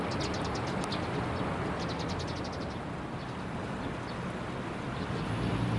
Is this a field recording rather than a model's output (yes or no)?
yes